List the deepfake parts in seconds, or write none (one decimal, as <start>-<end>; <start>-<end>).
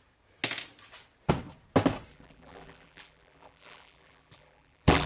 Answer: 2.1-5.1